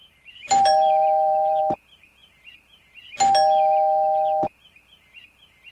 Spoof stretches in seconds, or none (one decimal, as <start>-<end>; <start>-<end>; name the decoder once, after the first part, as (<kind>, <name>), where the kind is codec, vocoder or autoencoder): 0.0-1.6 (vocoder, BigVGAN v2)